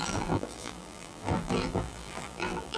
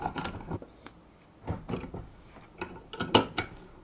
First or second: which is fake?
first